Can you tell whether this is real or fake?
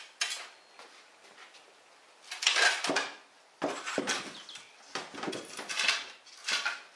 real